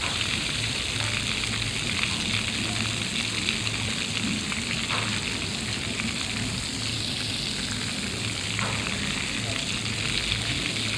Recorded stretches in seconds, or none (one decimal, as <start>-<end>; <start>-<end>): 0.8-11.0